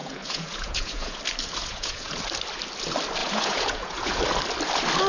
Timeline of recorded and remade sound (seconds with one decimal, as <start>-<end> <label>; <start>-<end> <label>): 0.0-1.2 remade; 1.2-1.6 recorded; 1.6-2.2 remade; 2.2-3.2 recorded; 3.2-4.2 remade; 4.2-5.1 recorded